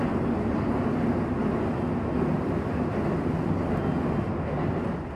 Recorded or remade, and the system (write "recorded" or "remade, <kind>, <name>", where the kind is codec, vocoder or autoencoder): recorded